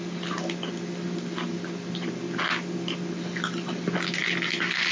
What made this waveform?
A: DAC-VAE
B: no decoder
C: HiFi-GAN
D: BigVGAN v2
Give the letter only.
B